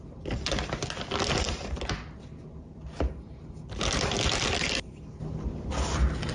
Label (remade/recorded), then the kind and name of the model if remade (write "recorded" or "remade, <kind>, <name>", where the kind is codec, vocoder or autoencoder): recorded